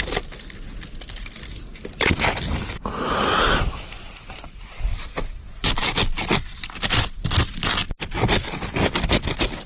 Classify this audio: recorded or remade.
recorded